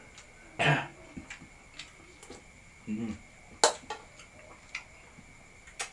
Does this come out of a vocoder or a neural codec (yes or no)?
no